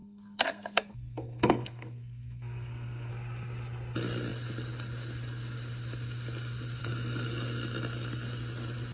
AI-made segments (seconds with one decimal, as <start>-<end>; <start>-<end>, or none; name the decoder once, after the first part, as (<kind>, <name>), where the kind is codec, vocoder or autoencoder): 0.0-3.1 (codec, SNAC)